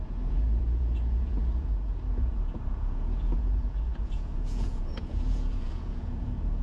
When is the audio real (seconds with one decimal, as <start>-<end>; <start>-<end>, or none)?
none